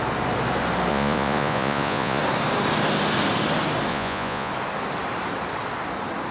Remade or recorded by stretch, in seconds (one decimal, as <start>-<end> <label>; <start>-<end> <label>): 0.0-0.9 recorded; 0.9-2.2 remade; 2.2-3.9 recorded; 3.9-4.5 remade; 4.5-6.3 recorded

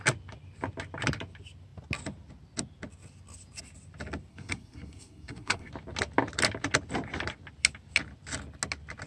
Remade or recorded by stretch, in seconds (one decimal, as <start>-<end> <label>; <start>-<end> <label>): 0.0-4.3 recorded; 4.3-5.7 remade; 5.7-9.1 recorded

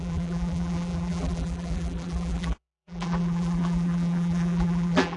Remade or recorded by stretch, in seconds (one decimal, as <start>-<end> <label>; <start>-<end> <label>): 0.0-5.2 remade

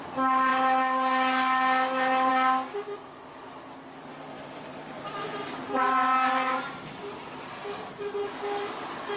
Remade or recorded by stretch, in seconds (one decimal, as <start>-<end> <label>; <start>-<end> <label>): 0.0-4.1 recorded; 4.1-5.8 remade; 5.8-9.2 recorded